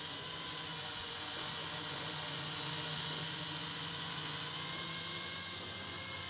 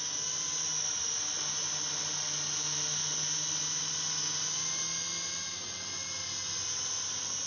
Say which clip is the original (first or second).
second